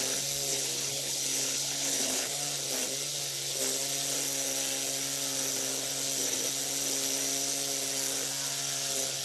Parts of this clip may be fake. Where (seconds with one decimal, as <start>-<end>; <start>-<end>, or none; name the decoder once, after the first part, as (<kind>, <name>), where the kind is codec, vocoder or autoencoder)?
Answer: 0.5-2.4 (codec, HILCodec)